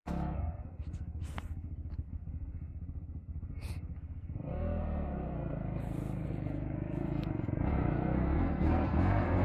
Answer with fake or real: fake